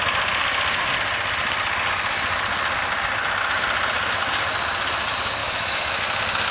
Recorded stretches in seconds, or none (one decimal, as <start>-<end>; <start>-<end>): 0.0-5.4; 6.0-6.5